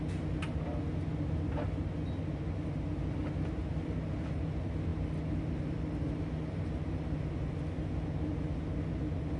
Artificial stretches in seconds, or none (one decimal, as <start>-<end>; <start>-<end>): none